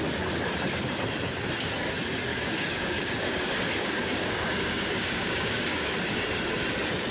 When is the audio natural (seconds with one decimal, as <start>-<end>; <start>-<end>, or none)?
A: 0.0-2.3; 6.2-7.1